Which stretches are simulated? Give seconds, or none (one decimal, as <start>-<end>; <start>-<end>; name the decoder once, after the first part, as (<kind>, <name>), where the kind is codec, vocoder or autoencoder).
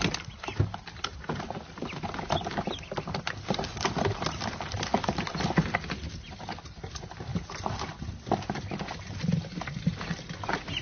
none